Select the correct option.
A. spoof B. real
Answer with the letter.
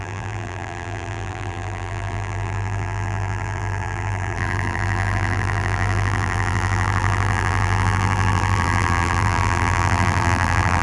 A